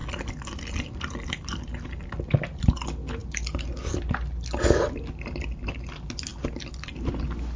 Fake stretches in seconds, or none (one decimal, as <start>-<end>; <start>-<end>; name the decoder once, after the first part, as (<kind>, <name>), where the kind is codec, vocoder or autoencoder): none